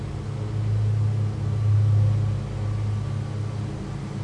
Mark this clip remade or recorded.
recorded